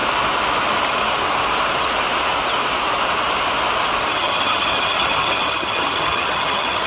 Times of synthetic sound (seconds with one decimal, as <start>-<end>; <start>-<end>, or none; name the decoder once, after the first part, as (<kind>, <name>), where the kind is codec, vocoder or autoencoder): 4.1-6.9 (vocoder, HiFi-GAN)